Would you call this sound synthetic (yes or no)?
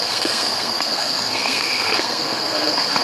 yes